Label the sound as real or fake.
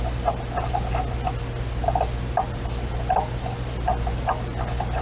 real